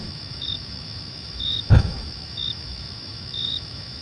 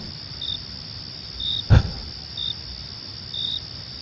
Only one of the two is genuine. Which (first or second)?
second